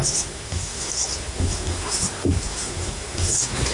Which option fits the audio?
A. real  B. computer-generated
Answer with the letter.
B